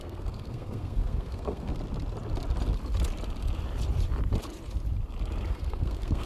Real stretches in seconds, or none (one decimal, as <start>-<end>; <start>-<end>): 1.7-5.5